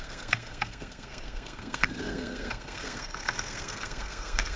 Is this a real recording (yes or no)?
no